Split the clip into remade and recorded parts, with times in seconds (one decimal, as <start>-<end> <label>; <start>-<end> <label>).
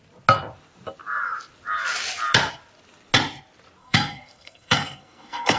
0.0-3.8 recorded; 3.8-5.6 remade